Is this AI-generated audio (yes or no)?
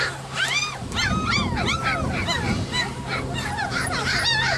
no